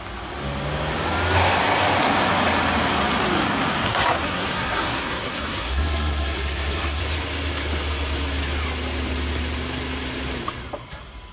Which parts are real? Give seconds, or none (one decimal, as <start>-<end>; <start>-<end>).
0.0-3.9; 7.0-11.3